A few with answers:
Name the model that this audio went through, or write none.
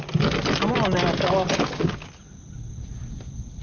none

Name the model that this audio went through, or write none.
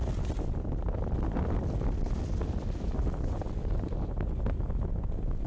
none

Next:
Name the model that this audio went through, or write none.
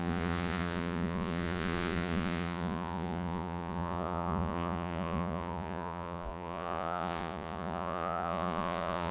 vocoder, Vocos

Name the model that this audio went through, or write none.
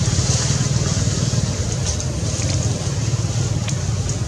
none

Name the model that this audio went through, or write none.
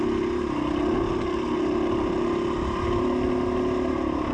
none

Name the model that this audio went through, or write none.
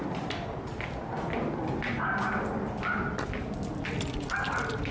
none